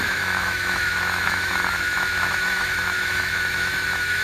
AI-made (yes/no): yes